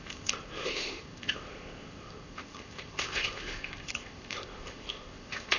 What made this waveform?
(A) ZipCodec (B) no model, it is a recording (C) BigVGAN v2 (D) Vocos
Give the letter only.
A